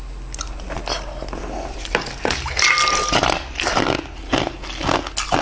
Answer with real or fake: real